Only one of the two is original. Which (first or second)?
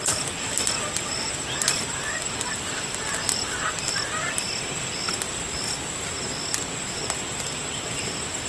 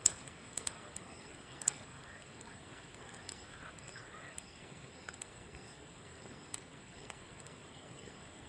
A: first